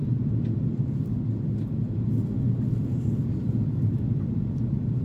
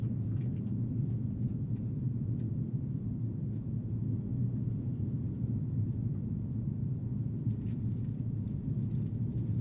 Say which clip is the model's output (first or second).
second